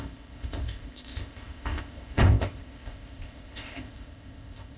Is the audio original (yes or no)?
no